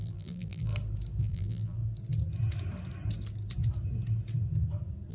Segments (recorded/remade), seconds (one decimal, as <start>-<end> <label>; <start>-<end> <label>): 0.0-0.7 remade; 0.7-1.2 recorded; 1.2-1.8 remade; 1.8-5.1 recorded